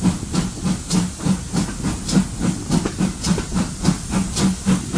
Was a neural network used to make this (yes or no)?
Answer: no